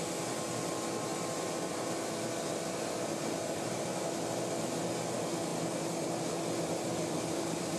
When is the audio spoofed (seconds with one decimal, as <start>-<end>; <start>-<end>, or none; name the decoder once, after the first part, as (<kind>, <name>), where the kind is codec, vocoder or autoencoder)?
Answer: none